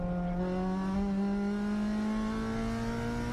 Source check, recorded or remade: recorded